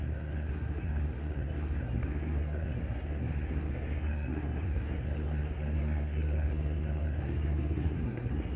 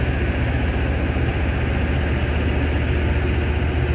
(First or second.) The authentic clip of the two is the second